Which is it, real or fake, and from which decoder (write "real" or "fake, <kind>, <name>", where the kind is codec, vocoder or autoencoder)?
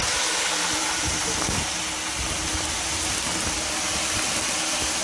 real